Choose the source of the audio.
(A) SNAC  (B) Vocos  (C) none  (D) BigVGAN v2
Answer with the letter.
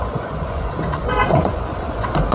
B